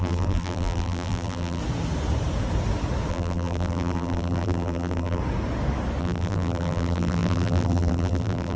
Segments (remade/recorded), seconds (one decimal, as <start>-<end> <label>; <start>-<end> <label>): 0.0-1.6 remade; 1.6-3.1 recorded; 3.1-5.2 remade; 5.2-6.0 recorded; 6.0-8.6 remade